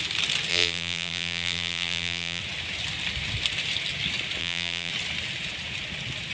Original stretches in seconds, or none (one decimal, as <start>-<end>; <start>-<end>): 0.0-0.5; 2.4-4.4; 4.9-6.3